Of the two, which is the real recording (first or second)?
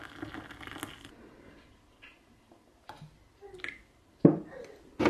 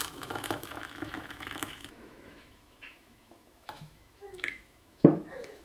first